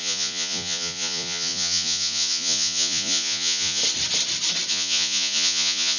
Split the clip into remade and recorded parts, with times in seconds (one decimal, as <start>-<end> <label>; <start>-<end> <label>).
0.0-3.8 remade; 3.8-4.7 recorded; 4.7-6.0 remade